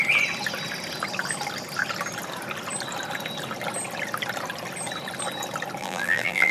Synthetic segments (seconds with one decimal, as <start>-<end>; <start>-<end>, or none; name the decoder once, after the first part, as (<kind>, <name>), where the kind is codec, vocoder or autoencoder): 5.8-6.5 (vocoder, BigVGAN v2)